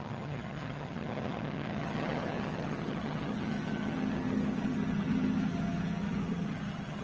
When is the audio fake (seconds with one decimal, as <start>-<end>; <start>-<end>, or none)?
0.0-7.0